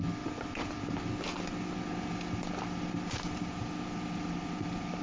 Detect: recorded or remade recorded